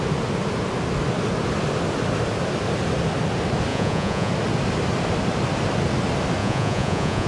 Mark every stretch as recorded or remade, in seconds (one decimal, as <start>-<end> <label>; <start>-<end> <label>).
0.0-3.7 recorded; 3.7-4.3 remade; 4.3-6.4 recorded; 6.4-7.3 remade